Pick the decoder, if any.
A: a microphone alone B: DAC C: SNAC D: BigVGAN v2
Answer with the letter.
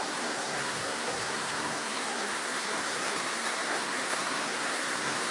C